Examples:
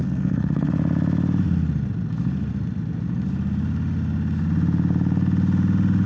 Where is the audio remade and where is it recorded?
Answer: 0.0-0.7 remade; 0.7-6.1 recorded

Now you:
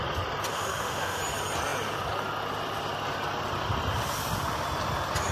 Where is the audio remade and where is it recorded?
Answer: 0.0-0.5 recorded; 0.5-1.2 remade; 1.2-5.3 recorded

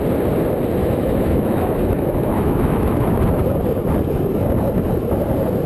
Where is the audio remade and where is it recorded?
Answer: 0.0-0.8 recorded; 0.8-3.2 remade; 3.2-5.7 recorded

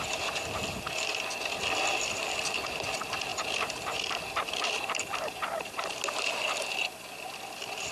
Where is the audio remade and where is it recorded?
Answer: 0.0-3.3 recorded; 3.3-5.9 remade; 5.9-7.9 recorded